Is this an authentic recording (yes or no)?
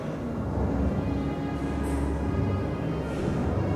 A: yes